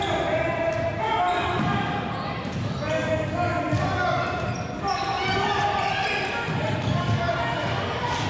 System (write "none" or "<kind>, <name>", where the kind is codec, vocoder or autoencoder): none